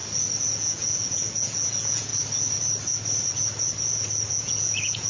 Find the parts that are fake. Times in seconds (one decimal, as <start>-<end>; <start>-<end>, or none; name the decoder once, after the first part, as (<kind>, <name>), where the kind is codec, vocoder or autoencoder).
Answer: 0.6-2.1 (vocoder, Vocos); 4.3-5.1